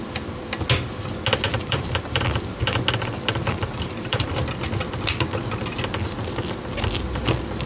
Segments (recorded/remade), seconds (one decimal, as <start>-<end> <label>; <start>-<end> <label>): 0.0-1.5 recorded; 1.5-2.2 remade; 2.2-3.6 recorded; 3.6-4.3 remade; 4.3-7.7 recorded

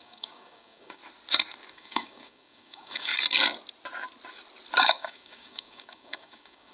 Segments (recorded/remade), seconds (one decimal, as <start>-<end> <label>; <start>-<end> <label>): 0.0-1.0 remade; 1.0-1.7 recorded; 1.7-3.1 remade; 3.1-4.8 recorded; 4.8-6.7 remade

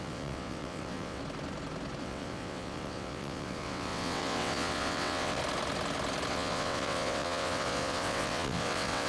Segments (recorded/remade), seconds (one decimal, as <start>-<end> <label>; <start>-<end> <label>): 0.0-1.2 remade; 1.2-2.0 recorded; 2.0-5.4 remade; 5.4-6.3 recorded; 6.3-9.1 remade

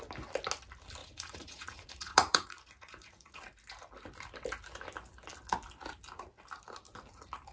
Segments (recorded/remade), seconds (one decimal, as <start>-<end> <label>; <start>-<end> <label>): 0.0-1.0 recorded; 1.0-3.4 remade; 3.4-7.5 recorded

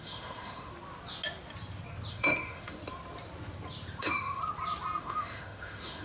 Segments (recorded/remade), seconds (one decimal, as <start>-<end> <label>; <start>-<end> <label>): 0.0-0.7 remade; 0.7-2.1 recorded; 2.1-2.8 remade; 2.8-4.0 recorded; 4.0-4.4 remade; 4.4-5.0 recorded; 5.0-6.0 remade

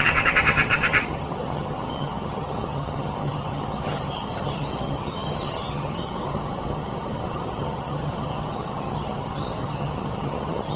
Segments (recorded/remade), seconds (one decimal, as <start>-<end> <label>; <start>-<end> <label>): 0.0-10.8 remade